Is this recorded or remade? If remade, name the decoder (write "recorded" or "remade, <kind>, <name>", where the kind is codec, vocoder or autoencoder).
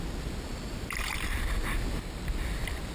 recorded